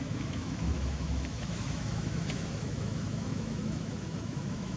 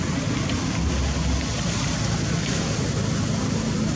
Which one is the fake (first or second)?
first